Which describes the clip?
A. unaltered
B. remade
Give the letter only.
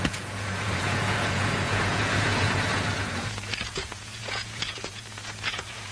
B